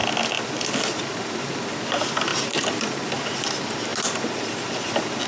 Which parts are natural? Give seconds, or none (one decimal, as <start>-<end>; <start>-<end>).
0.0-5.3